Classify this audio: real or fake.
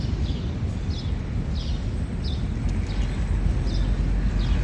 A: real